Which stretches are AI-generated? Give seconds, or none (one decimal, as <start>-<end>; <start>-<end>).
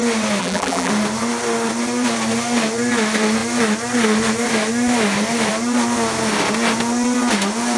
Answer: 0.4-0.9